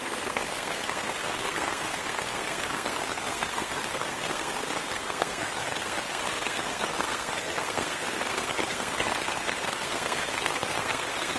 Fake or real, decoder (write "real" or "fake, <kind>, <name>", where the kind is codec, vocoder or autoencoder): fake, codec, SNAC